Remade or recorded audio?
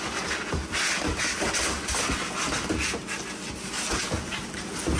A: recorded